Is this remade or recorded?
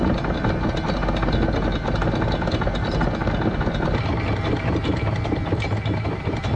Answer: recorded